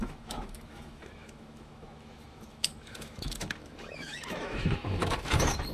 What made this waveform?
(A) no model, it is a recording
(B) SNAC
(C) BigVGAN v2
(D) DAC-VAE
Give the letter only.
D